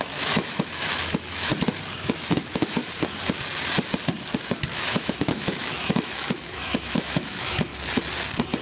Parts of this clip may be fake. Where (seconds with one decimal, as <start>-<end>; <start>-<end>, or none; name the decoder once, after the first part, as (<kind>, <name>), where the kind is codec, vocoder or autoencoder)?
0.0-1.5 (autoencoder, DAC-VAE); 2.0-2.8; 4.7-7.7